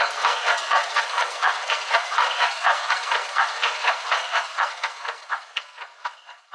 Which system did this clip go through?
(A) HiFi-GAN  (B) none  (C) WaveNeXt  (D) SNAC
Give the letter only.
D